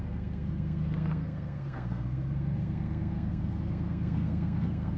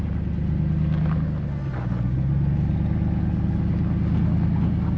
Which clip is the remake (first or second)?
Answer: first